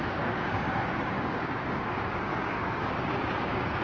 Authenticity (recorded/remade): remade